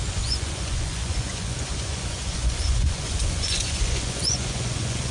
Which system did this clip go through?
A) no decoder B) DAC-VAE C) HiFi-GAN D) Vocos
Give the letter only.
D